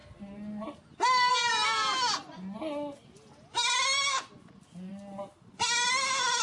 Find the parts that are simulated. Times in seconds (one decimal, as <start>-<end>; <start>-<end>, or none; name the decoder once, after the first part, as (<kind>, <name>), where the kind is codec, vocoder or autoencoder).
none